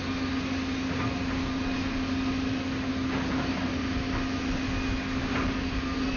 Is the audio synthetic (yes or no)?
no